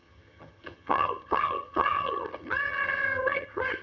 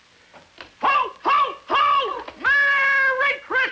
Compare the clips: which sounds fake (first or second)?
first